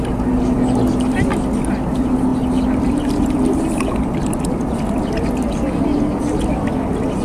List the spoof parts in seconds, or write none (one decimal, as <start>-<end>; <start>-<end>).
none